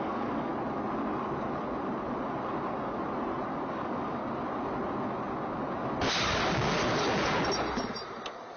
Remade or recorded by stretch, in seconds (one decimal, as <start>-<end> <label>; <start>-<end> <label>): 0.0-0.5 remade; 0.5-3.7 recorded; 3.7-4.2 remade; 4.2-8.6 recorded